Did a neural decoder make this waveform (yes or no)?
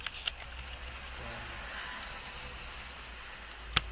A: no